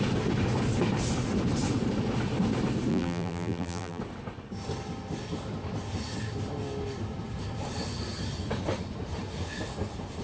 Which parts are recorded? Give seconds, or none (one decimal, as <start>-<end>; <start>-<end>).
0.0-2.9; 4.0-10.2